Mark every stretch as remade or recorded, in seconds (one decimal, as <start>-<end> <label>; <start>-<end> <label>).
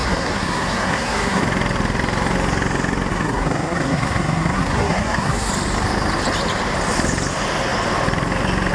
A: 0.0-1.4 remade; 1.4-3.1 recorded; 3.1-5.5 remade; 5.5-8.7 recorded